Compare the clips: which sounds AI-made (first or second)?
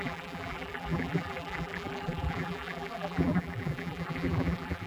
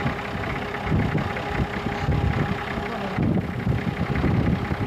first